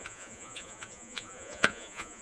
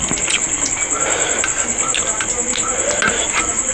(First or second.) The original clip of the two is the second